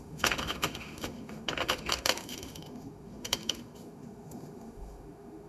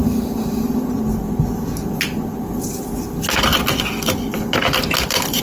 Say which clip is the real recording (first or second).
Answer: second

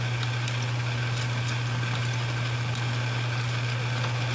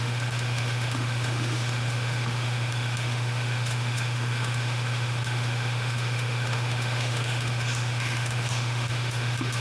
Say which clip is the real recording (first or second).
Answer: first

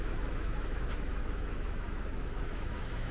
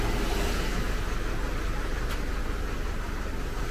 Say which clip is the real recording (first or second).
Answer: second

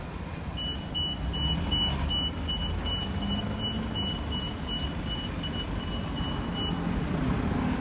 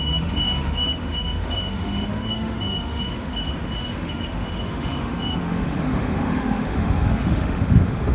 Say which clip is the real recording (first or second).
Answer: first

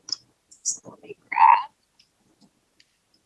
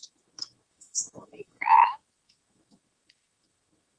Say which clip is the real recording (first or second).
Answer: first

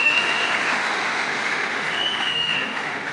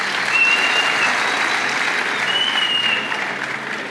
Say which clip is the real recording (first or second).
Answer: second